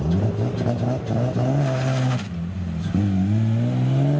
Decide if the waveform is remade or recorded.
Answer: recorded